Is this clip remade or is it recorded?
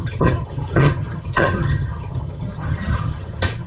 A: remade